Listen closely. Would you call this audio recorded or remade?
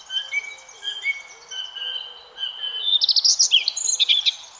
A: recorded